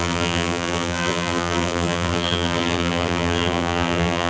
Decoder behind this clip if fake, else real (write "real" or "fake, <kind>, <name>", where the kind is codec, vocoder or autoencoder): fake, vocoder, BigVGAN v2